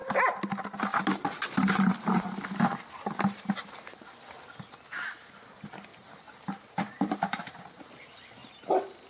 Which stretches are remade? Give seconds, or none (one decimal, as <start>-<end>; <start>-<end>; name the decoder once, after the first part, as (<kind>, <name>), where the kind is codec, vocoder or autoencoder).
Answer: 5.9-8.0 (vocoder, BigVGAN v2)